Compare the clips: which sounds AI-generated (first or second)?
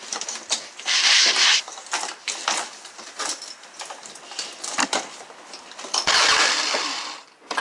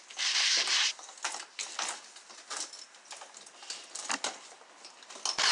first